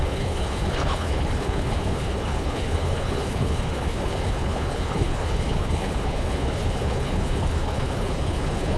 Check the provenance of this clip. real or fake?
fake